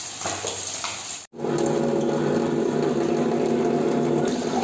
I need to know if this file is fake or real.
real